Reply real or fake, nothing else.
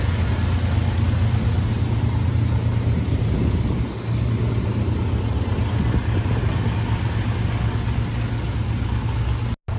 real